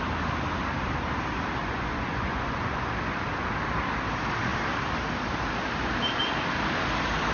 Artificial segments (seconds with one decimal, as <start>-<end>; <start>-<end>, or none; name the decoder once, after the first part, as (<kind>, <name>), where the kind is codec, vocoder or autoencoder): 1.6-2.9 (vocoder, Vocos)